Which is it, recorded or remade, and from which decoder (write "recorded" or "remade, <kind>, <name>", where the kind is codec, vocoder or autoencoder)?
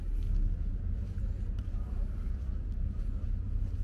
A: recorded